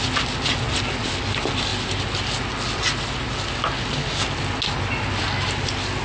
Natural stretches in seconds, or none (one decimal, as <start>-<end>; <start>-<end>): 0.0-6.0